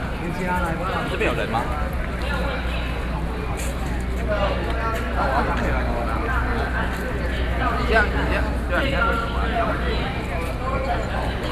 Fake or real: real